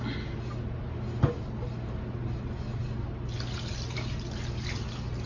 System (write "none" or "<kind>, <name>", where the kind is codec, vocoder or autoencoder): none